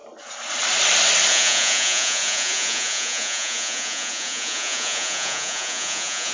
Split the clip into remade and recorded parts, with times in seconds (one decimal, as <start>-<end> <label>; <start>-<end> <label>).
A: 0.0-1.3 recorded; 1.3-6.3 remade